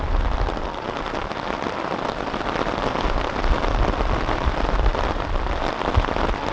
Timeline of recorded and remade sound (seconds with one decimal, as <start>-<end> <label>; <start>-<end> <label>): 0.0-6.5 recorded